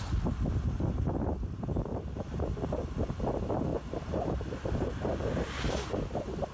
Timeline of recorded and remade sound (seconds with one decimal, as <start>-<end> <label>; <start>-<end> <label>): 0.0-3.7 recorded; 3.7-5.5 remade; 5.5-6.5 recorded